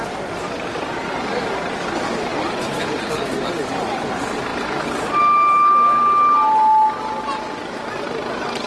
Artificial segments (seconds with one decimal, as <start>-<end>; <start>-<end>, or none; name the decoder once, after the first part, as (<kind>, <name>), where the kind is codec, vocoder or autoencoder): none